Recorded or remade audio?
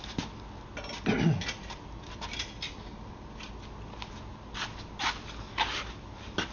recorded